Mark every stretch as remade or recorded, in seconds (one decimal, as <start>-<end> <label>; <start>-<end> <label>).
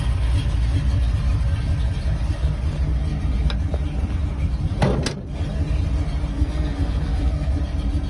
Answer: 0.0-6.3 recorded; 6.3-7.5 remade; 7.5-8.1 recorded